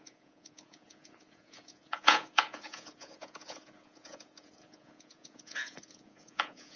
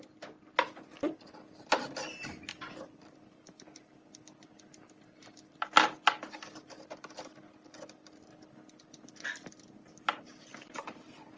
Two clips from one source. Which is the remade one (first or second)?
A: first